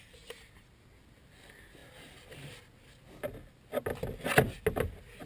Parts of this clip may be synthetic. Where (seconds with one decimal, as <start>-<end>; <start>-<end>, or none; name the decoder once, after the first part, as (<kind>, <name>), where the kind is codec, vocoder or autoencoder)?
none